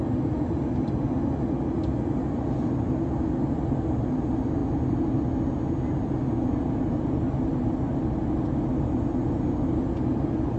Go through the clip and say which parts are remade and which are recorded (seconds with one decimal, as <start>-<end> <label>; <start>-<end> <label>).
0.0-10.6 recorded